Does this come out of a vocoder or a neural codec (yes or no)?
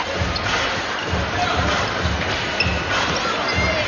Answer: no